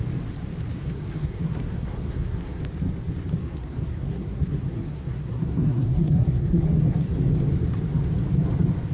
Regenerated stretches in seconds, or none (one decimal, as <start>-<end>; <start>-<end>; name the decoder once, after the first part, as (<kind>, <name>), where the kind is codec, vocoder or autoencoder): 0.7-2.6 (codec, SNAC); 3.4-7.1